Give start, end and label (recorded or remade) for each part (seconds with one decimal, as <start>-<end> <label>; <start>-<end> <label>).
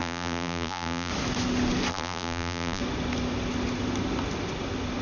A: 0.0-1.1 remade; 1.1-1.9 recorded; 1.9-2.8 remade; 2.8-5.0 recorded